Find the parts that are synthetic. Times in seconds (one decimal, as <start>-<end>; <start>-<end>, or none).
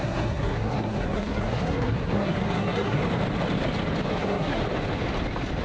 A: 0.0-3.0; 4.1-4.6